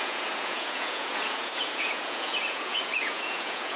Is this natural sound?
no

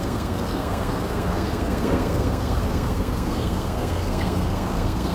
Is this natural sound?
no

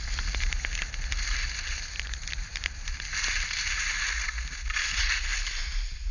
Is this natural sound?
yes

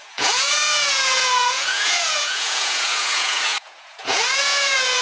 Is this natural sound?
no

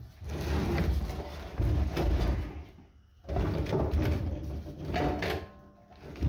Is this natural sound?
yes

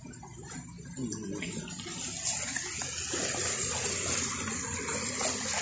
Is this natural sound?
yes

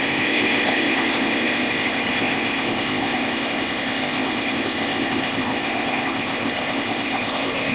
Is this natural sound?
no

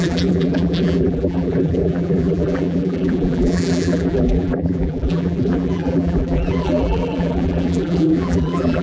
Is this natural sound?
no